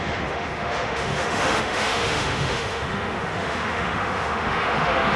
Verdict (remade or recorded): remade